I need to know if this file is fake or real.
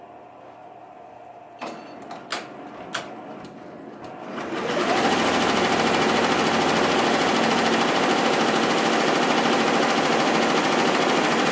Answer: real